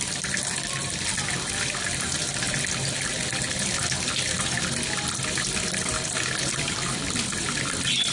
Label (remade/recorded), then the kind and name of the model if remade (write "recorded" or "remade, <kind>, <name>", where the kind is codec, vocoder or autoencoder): remade, vocoder, BigVGAN v2